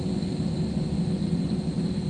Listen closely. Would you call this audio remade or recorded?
recorded